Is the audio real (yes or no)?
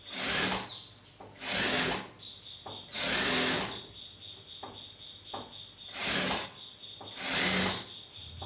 yes